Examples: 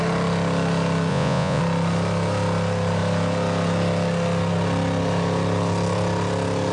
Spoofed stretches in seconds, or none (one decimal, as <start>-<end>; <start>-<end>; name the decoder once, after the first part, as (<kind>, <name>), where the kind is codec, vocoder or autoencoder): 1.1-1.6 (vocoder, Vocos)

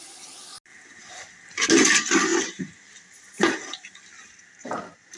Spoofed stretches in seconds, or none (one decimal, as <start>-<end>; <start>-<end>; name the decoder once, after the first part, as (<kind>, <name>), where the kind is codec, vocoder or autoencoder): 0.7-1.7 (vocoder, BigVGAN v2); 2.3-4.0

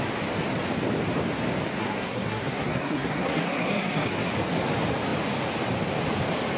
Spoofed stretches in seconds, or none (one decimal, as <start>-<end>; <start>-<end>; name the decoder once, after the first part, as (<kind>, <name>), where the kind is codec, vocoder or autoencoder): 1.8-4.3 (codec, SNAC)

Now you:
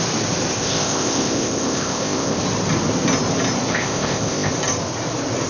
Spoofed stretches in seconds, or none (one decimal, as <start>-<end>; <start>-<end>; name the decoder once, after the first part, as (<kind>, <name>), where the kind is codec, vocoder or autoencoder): 0.5-2.4 (codec, ZipCodec); 3.7-4.5

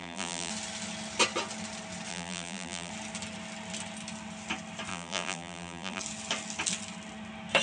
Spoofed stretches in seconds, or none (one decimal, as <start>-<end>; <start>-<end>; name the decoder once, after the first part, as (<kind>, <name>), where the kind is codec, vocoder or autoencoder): 0.0-0.5 (vocoder, BigVGAN v2); 2.1-2.9; 4.9-6.0

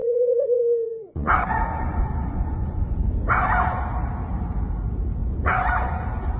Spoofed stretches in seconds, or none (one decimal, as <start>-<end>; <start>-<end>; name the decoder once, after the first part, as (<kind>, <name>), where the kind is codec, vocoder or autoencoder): 0.0-3.8 (vocoder, Vocos); 5.2-6.4